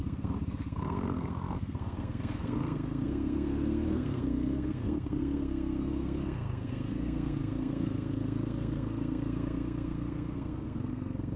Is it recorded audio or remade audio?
remade